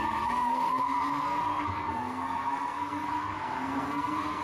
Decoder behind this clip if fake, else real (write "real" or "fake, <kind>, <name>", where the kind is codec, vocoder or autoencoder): fake, codec, SNAC